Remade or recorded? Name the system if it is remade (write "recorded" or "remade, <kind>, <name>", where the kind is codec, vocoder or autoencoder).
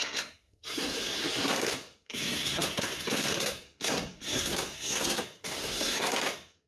remade, codec, SNAC